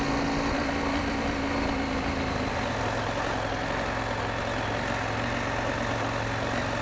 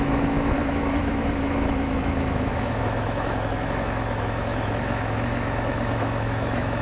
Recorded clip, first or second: first